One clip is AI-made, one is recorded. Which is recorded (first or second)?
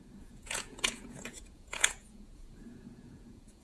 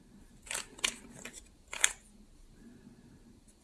second